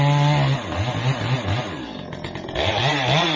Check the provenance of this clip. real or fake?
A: real